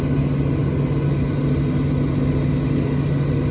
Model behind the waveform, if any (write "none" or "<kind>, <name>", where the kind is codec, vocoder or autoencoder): none